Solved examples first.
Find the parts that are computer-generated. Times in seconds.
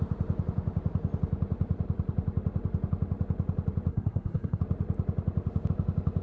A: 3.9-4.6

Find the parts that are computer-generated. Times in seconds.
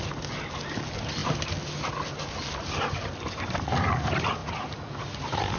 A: none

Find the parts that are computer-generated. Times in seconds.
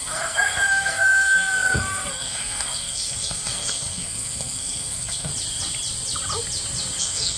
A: 0.0-5.3; 7.0-7.4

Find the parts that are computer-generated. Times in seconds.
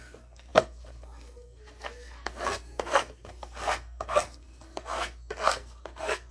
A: 0.0-6.3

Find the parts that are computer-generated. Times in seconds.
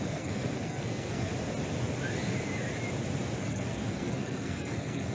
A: 0.0-1.3; 3.4-5.1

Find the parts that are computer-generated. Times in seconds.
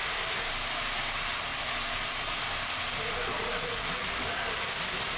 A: 0.0-0.5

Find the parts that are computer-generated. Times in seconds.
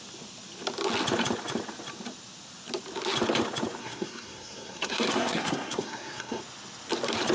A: 3.8-6.4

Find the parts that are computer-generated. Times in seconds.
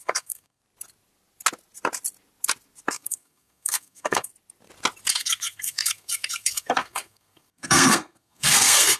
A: 0.0-0.6; 2.9-4.3; 5.1-9.0